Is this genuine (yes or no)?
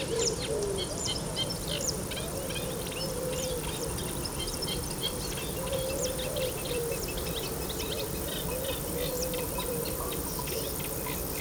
no